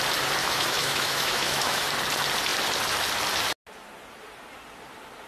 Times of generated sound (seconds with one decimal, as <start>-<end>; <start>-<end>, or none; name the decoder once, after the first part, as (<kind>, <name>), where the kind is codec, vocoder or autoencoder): 0.4-1.9 (autoencoder, DAC-VAE)